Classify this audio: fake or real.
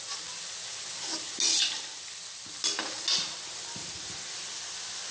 real